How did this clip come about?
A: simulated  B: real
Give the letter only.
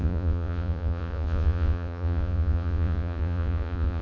A